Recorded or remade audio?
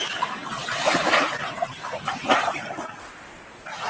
recorded